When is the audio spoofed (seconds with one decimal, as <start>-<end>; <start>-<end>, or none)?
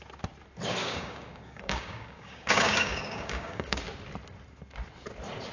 0.8-3.8